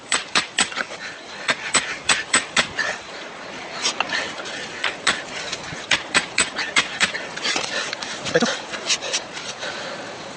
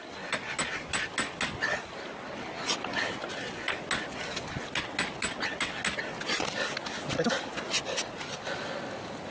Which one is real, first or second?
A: second